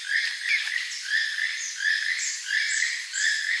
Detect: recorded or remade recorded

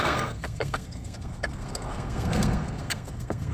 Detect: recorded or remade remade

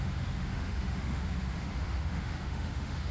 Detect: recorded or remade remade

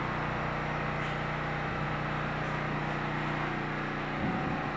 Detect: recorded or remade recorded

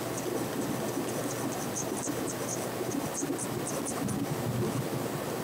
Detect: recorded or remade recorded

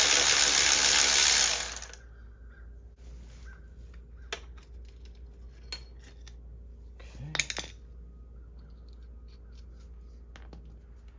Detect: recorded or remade recorded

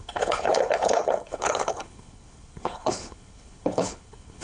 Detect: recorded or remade remade